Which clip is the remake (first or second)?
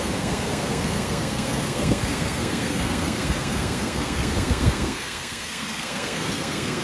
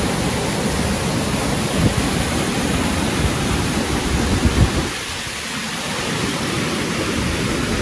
first